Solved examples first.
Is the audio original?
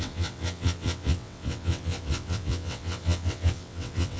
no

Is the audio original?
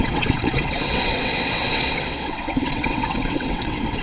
no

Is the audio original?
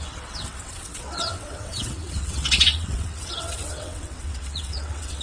no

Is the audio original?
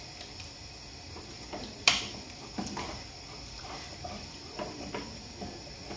yes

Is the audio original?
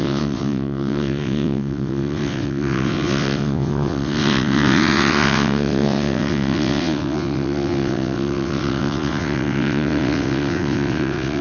no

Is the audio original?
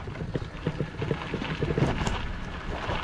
yes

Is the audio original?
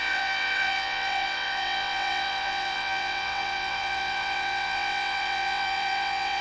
no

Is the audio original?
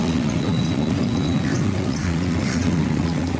no